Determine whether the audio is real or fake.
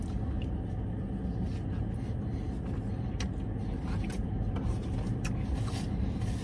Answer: real